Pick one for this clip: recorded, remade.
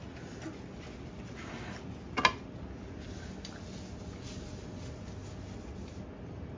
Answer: recorded